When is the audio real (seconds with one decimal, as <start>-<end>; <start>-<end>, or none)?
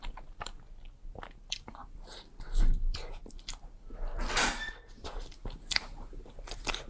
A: 0.0-6.9